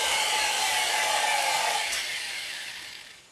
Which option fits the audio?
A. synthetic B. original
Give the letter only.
A